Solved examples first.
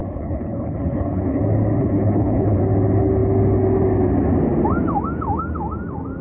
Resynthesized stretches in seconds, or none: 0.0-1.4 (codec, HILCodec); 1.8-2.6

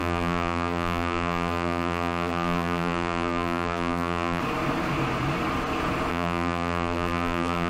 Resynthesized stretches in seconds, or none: 0.0-4.4 (vocoder, BigVGAN v2); 6.1-7.7

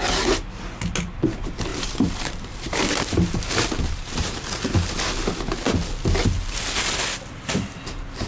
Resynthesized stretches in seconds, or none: 1.7-4.6 (vocoder, BigVGAN v2)

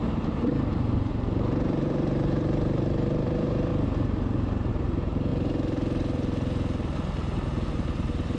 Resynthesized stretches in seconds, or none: 0.0-3.7 (vocoder, BigVGAN v2); 4.7-5.3; 7.7-8.4

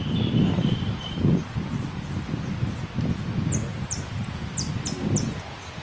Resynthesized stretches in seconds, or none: 0.6-2.8 (vocoder, BigVGAN v2); 3.7-4.7

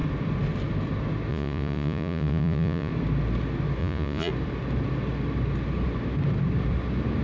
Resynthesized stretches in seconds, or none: 1.3-2.9 (vocoder, Vocos); 3.8-4.3

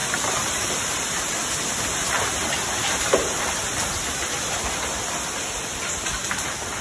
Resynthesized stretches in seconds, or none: 2.8-3.6 (vocoder, BigVGAN v2)